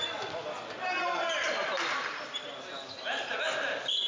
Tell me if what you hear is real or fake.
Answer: real